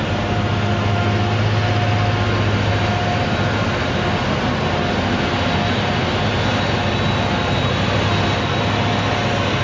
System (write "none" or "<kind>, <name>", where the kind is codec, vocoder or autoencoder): none